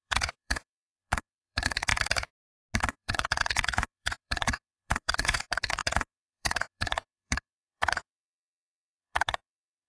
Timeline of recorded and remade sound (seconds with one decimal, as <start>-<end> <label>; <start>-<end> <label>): 0.0-1.9 remade; 1.9-2.8 recorded; 2.8-9.9 remade